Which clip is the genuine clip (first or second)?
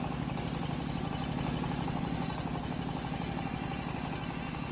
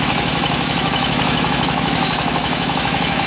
first